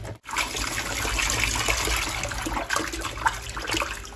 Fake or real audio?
real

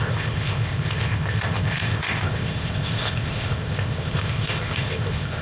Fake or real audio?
fake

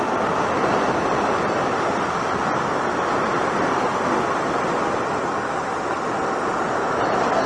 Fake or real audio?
real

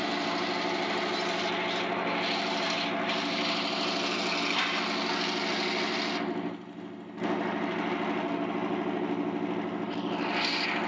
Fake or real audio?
real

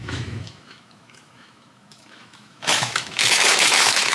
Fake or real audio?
fake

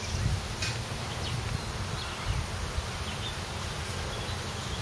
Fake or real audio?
real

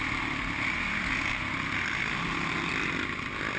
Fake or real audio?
real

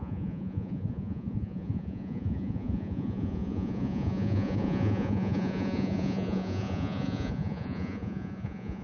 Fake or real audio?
fake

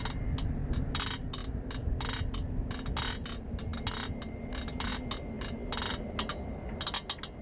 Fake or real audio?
real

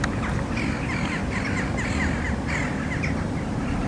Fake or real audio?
real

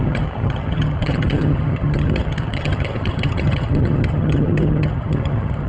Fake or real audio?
fake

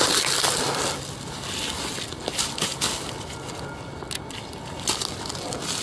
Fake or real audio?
real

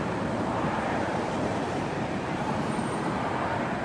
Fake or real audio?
fake